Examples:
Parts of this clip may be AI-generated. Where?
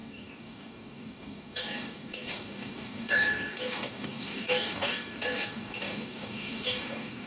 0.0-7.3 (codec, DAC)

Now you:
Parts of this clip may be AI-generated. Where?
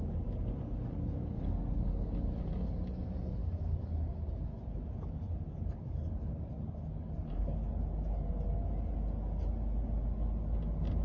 0.0-7.6 (codec, DAC)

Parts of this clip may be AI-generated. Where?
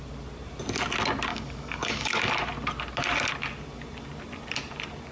1.3-2.3 (codec, DAC)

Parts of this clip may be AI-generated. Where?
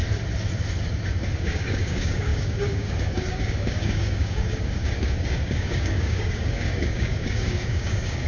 1.3-8.3 (codec, DAC)